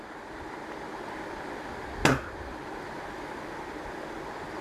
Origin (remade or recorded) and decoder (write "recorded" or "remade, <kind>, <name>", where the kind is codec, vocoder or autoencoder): recorded